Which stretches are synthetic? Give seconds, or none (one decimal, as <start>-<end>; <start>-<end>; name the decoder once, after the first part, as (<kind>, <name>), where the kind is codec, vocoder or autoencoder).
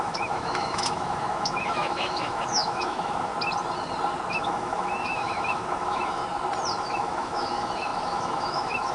0.0-3.3 (autoencoder, DAC-VAE); 4.3-6.2; 6.8-8.9